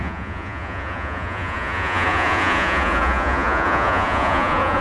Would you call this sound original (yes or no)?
no